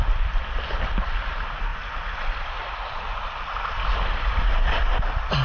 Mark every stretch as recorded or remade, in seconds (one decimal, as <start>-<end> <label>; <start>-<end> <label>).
0.0-5.4 recorded